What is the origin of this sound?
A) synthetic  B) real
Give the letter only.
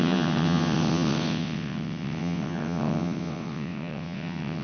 A